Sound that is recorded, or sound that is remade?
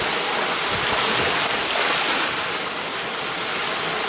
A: recorded